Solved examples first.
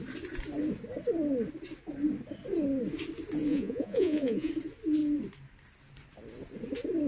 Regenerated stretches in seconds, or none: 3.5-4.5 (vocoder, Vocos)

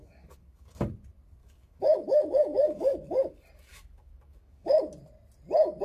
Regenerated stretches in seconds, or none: 0.0-0.9 (codec, DAC); 1.4-3.3; 3.7-4.8

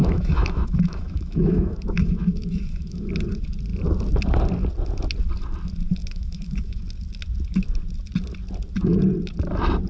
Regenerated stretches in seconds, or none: 0.0-3.1 (autoencoder, DAC-VAE); 6.0-6.8

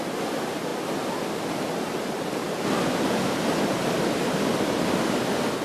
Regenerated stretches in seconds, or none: none

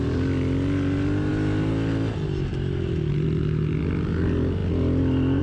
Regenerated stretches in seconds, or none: none

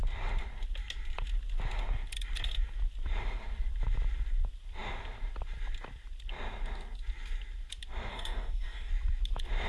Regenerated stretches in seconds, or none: 8.1-8.9 (codec, DAC)